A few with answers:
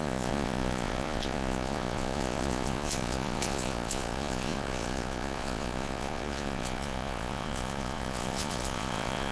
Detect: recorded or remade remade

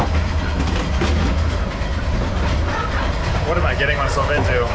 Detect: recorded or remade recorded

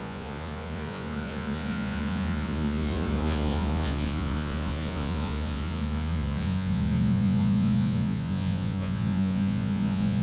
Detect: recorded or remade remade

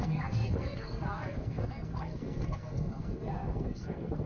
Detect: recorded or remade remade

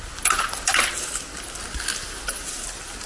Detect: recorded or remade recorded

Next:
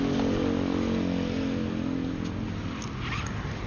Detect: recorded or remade recorded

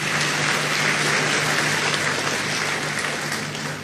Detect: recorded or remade recorded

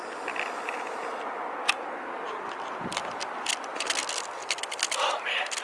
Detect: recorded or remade recorded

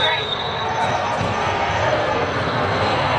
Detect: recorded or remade remade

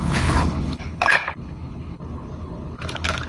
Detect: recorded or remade remade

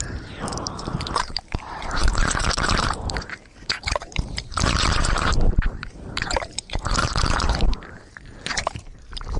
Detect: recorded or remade remade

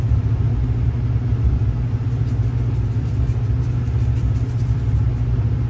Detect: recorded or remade recorded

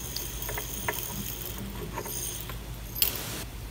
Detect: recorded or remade recorded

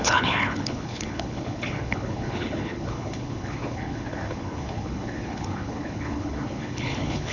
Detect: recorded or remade remade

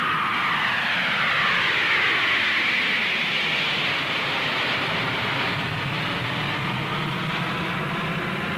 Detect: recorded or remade recorded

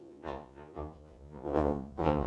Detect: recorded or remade remade